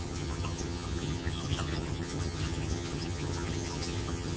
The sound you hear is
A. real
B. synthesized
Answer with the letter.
B